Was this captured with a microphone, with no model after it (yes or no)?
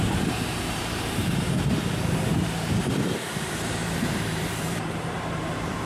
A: no